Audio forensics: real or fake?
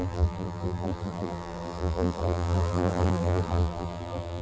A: fake